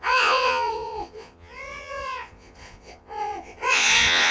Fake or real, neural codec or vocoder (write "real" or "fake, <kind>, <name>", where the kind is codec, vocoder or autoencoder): fake, vocoder, Vocos